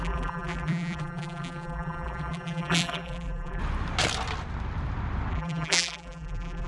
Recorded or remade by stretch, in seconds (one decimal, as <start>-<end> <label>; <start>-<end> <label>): 0.0-3.6 remade; 3.6-5.3 recorded; 5.3-6.7 remade

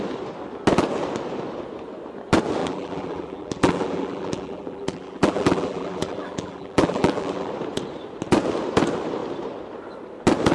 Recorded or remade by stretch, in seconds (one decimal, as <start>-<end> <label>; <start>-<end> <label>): 0.0-2.6 recorded; 2.6-7.5 remade; 7.5-10.5 recorded

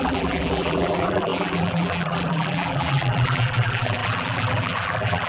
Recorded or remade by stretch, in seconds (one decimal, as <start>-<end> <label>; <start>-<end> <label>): 0.0-5.3 remade

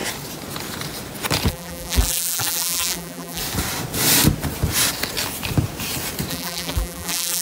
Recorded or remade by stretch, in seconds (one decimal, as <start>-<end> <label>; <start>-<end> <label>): 0.0-1.5 recorded; 1.5-3.4 remade; 3.4-6.3 recorded; 6.3-7.4 remade

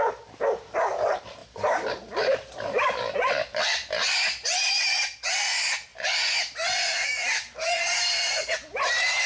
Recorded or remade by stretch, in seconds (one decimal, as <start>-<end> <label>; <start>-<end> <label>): 0.0-1.4 recorded; 1.4-3.0 remade; 3.0-9.3 recorded

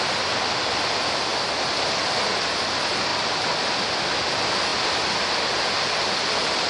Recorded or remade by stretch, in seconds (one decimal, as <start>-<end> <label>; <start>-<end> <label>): 0.0-1.3 remade; 1.3-2.3 recorded; 2.3-4.7 remade; 4.7-5.8 recorded; 5.8-6.7 remade